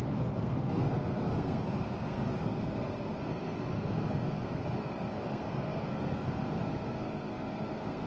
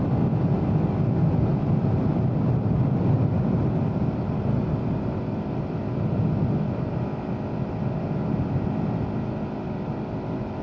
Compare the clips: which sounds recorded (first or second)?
second